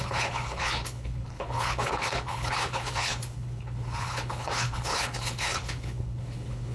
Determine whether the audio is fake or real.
fake